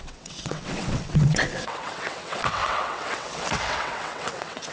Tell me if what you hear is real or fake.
fake